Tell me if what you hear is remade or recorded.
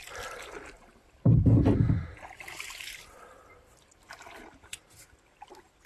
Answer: recorded